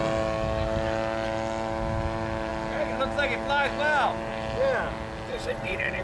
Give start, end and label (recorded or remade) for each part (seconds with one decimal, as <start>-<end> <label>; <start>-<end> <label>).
0.0-5.3 recorded; 5.3-6.0 remade